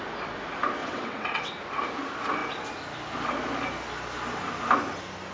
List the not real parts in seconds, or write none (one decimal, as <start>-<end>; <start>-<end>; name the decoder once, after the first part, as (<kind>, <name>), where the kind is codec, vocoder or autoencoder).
0.8-1.6 (vocoder, WaveNeXt)